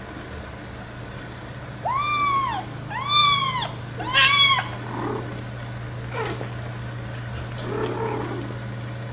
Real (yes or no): yes